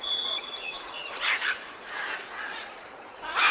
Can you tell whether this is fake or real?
fake